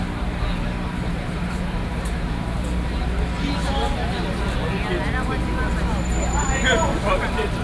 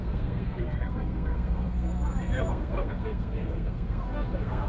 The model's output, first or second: second